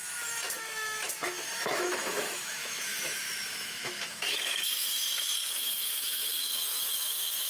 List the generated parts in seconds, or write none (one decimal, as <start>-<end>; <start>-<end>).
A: 0.0-7.5